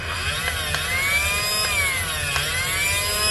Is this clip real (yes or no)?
yes